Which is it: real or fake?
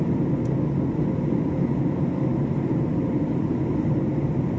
real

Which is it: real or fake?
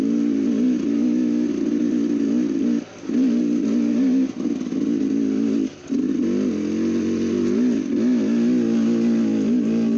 real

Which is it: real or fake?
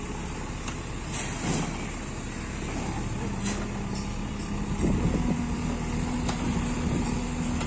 real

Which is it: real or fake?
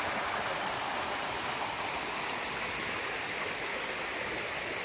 real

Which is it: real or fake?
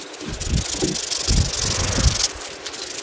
real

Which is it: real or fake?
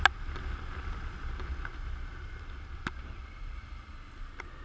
real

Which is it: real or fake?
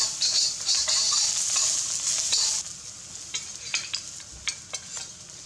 real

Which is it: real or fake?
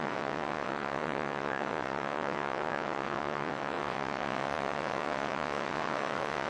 fake